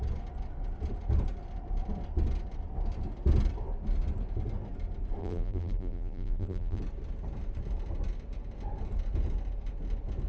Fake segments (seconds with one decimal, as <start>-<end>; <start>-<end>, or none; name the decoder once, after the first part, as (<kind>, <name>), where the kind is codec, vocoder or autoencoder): 5.2-6.8 (vocoder, BigVGAN v2)